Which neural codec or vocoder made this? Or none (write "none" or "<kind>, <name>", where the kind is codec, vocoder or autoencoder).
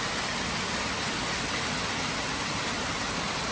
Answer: none